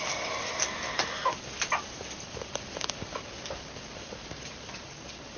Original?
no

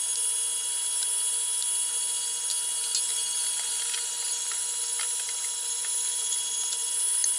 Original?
yes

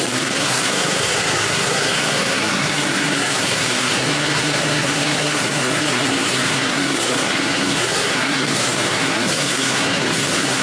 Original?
no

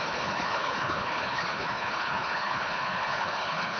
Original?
no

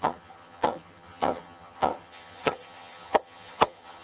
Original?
no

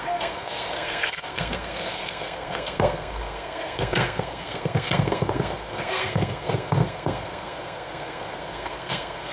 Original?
no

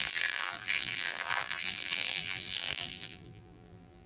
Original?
no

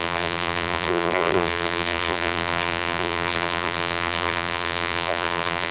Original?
no